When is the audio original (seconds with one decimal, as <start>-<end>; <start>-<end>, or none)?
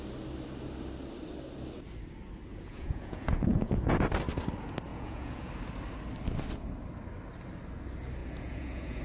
0.0-2.5; 4.0-4.9; 5.5-8.2